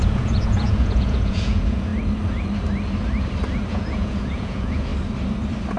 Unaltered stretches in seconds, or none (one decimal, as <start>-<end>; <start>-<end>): 1.9-3.7; 4.9-5.8